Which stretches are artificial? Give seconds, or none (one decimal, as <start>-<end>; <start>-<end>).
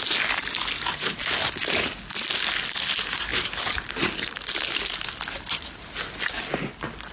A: none